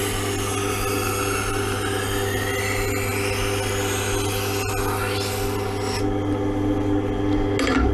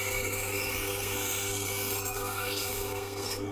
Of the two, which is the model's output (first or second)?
second